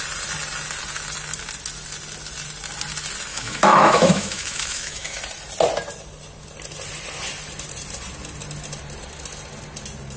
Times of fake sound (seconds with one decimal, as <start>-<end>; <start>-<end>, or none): 3.3-5.2